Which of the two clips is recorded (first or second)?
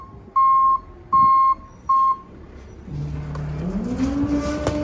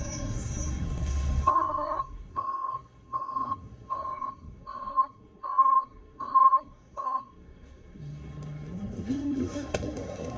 first